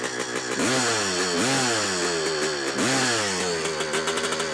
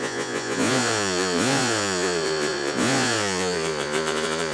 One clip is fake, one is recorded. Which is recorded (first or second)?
first